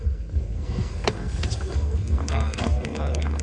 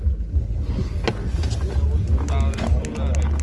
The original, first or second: second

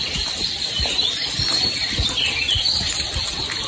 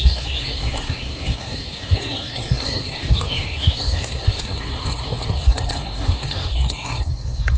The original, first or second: first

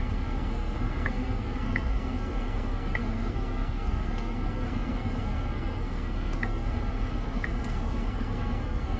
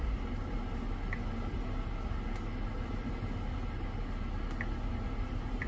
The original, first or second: second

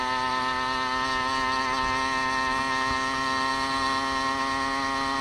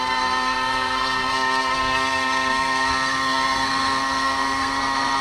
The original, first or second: first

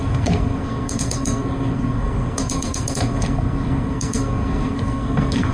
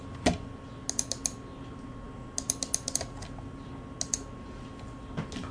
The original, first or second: second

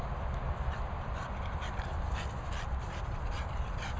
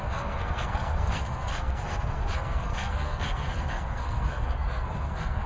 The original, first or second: first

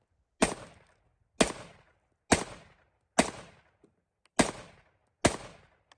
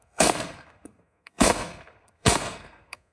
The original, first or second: first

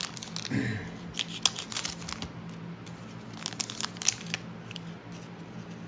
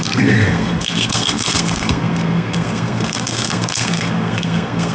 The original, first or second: first